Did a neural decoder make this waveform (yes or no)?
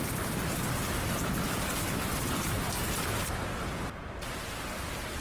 no